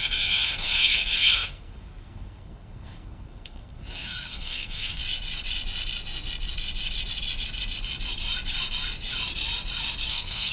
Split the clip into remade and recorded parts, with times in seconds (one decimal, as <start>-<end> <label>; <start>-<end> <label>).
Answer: 0.0-5.0 remade; 5.0-10.1 recorded; 10.1-10.5 remade